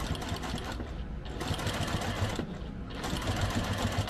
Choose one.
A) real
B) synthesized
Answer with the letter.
A